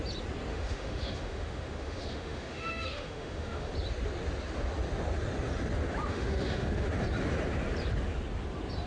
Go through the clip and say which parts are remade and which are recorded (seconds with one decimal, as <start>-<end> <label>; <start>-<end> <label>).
0.0-0.5 recorded; 0.5-3.7 remade; 3.7-6.1 recorded; 6.1-6.9 remade; 6.9-8.9 recorded